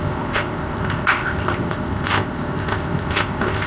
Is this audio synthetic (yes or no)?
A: yes